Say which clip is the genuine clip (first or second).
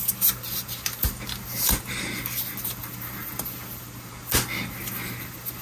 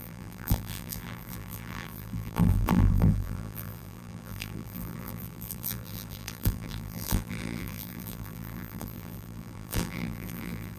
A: first